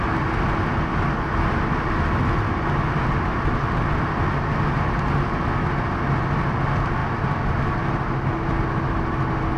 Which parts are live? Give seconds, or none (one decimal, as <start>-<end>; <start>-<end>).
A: 0.0-9.6